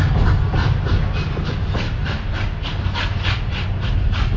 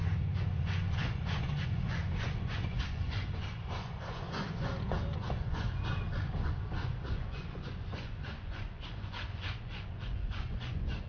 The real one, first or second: first